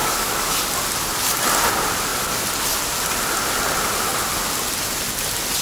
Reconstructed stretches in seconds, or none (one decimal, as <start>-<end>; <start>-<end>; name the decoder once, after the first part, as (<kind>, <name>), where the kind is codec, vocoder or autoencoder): 0.0-0.5 (codec, DAC)